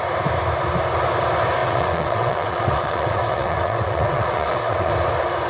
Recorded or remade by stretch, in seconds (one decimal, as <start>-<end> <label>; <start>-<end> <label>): 0.0-1.6 recorded; 1.6-4.9 remade; 4.9-5.5 recorded